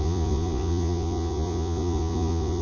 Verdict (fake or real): fake